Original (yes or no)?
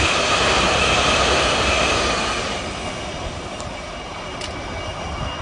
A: yes